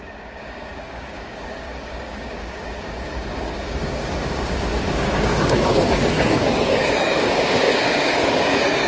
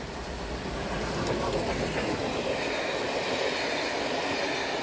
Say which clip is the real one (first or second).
second